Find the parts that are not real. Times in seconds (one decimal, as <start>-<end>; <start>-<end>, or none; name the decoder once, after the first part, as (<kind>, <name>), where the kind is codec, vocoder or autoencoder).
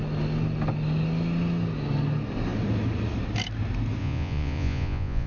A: 4.0-5.3 (vocoder, Vocos)